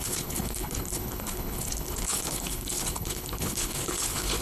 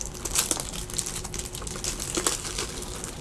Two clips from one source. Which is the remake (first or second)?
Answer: first